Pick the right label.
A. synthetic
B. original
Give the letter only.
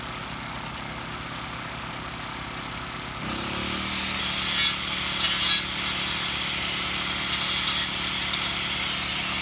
B